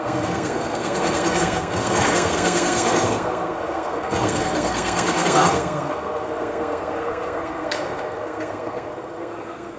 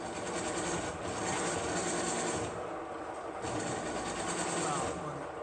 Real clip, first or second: second